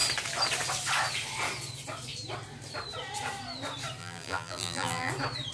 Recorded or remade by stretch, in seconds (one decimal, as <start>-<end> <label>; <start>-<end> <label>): 0.0-4.0 recorded; 4.0-5.1 remade; 5.1-5.5 recorded